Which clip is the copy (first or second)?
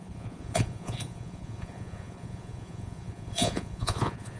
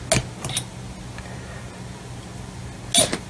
first